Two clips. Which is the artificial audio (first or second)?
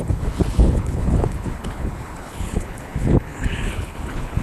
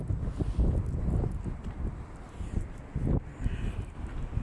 first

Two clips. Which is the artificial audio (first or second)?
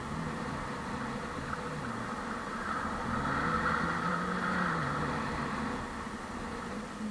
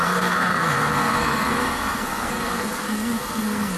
second